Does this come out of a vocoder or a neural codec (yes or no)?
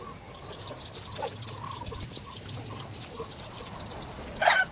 no